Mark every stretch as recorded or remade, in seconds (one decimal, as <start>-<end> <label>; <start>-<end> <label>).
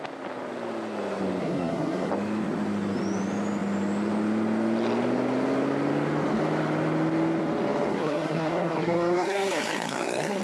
0.0-1.4 recorded; 1.4-2.1 remade; 2.1-7.9 recorded; 7.9-10.4 remade